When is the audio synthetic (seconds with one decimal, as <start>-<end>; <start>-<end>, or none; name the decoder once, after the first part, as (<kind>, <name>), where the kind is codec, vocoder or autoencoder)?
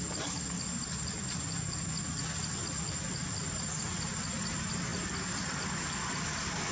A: none